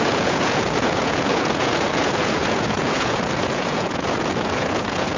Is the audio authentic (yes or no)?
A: no